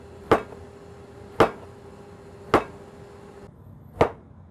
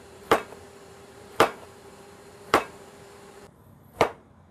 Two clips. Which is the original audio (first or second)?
first